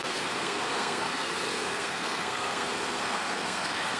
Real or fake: fake